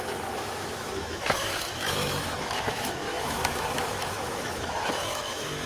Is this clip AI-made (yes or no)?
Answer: yes